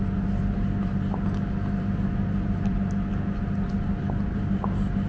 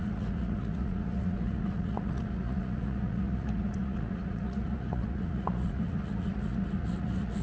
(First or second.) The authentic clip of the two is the first